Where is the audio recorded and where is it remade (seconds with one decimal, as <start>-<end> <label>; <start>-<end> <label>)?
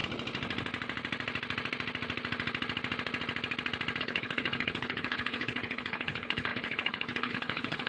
0.0-4.0 recorded; 4.0-7.9 remade